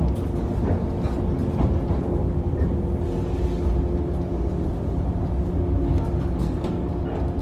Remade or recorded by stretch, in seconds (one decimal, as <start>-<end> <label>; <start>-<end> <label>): 0.0-6.4 recorded; 6.4-7.0 remade; 7.0-7.4 recorded